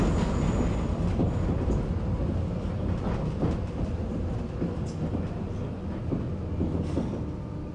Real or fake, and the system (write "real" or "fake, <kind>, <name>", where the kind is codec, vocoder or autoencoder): real